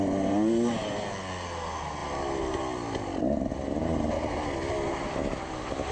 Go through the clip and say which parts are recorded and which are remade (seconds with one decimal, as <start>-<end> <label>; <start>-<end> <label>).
0.0-5.9 recorded